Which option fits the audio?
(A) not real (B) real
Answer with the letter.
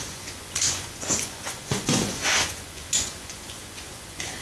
A